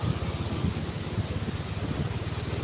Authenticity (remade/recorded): recorded